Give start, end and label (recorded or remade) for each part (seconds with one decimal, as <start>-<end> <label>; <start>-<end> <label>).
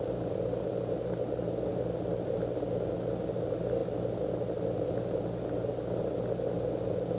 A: 0.0-7.2 recorded